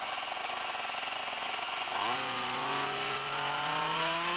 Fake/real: fake